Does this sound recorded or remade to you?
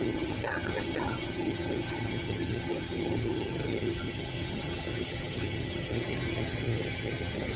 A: remade